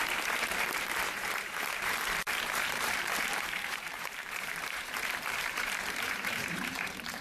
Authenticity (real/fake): fake